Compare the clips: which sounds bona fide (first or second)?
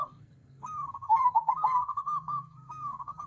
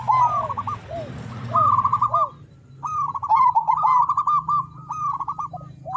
second